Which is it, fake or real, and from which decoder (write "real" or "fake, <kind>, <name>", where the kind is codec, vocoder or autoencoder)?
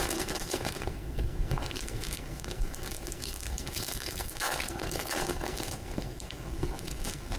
fake, codec, SNAC